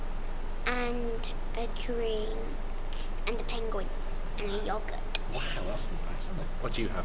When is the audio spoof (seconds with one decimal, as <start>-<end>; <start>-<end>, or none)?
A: none